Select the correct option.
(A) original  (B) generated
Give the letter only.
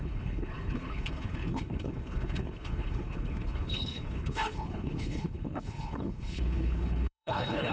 B